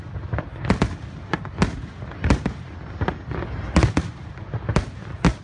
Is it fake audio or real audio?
real